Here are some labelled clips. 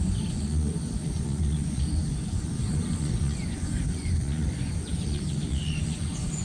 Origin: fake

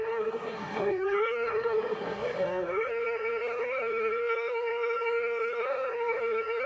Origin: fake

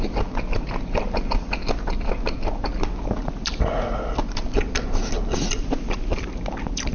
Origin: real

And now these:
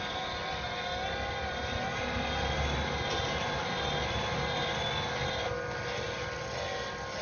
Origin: real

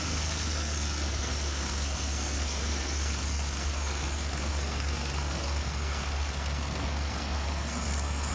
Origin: fake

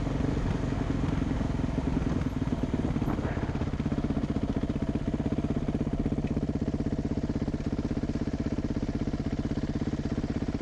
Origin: real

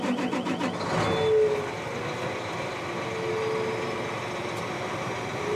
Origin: real